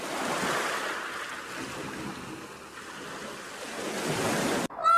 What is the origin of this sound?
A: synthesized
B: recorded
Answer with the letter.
B